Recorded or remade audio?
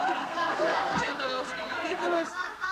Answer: remade